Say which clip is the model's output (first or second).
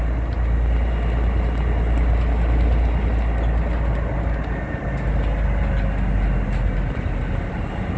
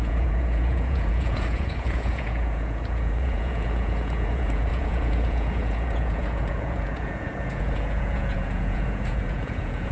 second